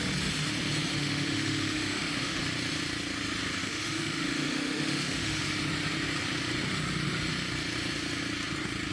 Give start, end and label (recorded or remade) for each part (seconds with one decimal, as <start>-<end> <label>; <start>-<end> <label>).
0.0-0.9 recorded; 0.9-2.4 remade; 2.4-3.6 recorded; 3.6-5.4 remade; 5.4-8.9 recorded